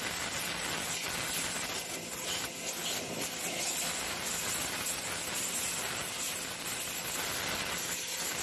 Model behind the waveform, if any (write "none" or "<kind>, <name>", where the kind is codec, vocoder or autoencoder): none